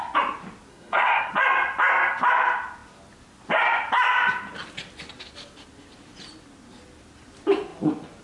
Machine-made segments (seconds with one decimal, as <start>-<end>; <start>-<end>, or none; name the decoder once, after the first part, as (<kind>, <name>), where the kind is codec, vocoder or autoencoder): 0.7-1.3 (codec, SNAC)